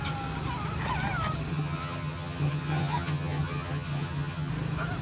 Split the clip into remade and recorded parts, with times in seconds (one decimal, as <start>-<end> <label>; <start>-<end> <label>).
0.0-1.5 recorded; 1.5-4.5 remade; 4.5-5.0 recorded